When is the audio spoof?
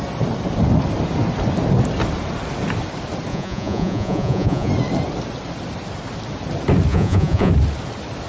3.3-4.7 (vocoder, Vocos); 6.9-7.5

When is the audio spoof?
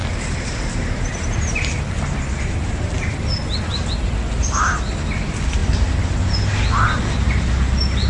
none